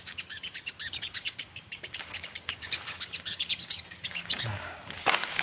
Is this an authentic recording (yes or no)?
no